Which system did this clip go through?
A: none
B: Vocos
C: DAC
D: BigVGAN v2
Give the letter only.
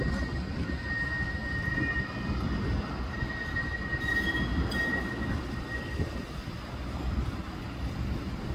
A